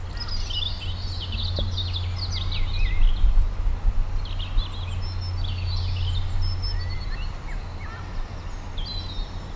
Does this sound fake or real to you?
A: real